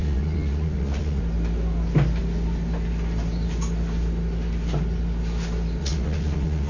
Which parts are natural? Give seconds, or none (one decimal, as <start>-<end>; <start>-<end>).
1.2-5.8